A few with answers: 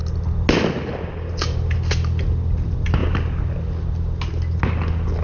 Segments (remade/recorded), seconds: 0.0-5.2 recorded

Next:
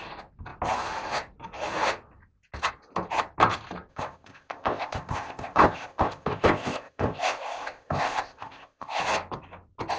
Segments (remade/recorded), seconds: 0.0-3.9 recorded; 3.9-9.0 remade; 9.0-10.0 recorded

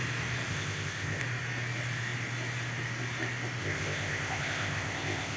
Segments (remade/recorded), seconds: 0.0-0.5 recorded; 0.5-1.2 remade; 1.2-3.6 recorded; 3.6-5.4 remade

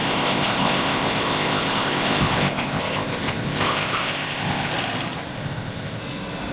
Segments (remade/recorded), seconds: 0.0-4.7 remade; 4.7-5.3 recorded; 5.3-6.0 remade; 6.0-6.5 recorded

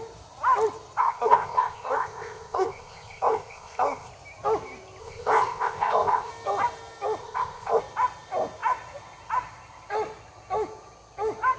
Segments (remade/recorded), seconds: 0.0-1.0 recorded; 1.0-4.1 remade; 4.1-5.0 recorded; 5.0-6.3 remade; 6.3-7.2 recorded; 7.2-7.8 remade; 7.8-11.6 recorded

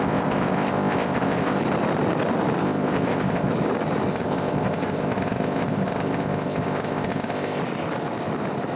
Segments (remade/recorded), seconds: 0.0-1.6 remade; 1.6-2.6 recorded; 2.6-3.5 remade; 3.5-4.1 recorded; 4.1-7.6 remade; 7.6-8.8 recorded

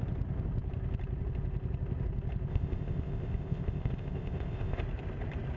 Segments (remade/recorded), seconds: 0.0-2.5 recorded; 2.5-4.8 remade; 4.8-5.6 recorded

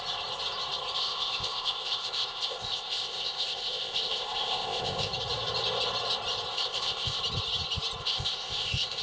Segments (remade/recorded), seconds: 0.0-1.0 recorded; 1.0-5.1 remade; 5.1-6.5 recorded; 6.5-7.2 remade; 7.2-8.0 recorded; 8.0-9.0 remade